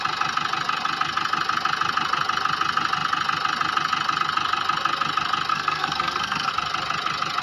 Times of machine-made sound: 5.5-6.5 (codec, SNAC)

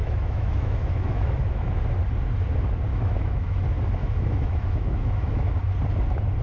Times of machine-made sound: 0.0-1.8 (autoencoder, DAC-VAE); 2.9-3.6; 4.0-5.5

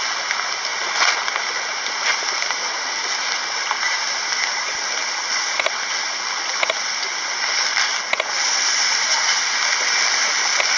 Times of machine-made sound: none